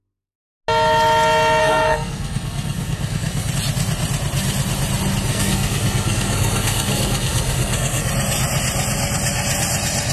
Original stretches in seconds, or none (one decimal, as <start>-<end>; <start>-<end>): 0.0-1.6; 3.5-5.3; 8.1-10.1